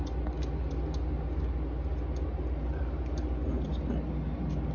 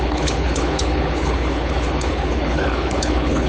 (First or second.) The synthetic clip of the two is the second